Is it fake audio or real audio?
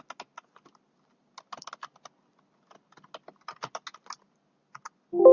real